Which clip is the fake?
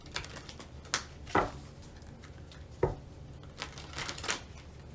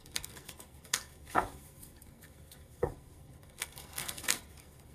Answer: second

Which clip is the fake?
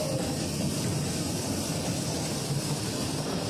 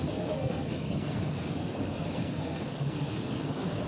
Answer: second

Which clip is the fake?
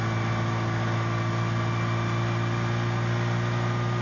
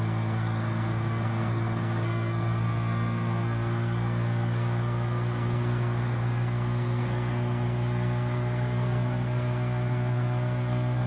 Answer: second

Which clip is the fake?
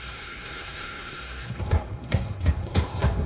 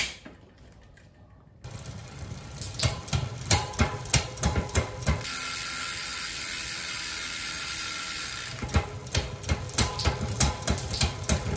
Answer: first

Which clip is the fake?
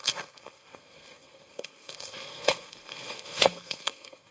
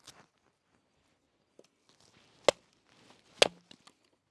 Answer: first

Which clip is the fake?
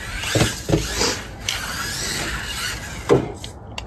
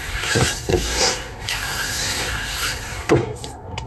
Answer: second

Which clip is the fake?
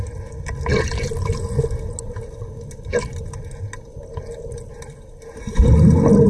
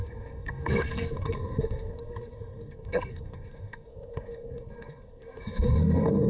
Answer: second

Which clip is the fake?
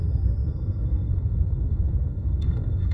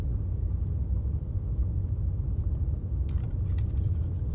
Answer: first